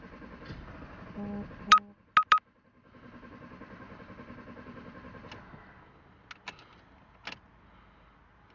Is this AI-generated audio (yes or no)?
no